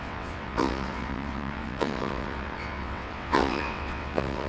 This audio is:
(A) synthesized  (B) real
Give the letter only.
A